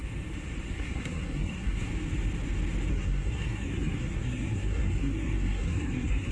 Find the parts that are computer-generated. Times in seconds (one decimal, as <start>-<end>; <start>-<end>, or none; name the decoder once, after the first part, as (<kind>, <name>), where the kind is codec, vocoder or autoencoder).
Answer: 0.7-1.9 (codec, SNAC); 2.9-6.3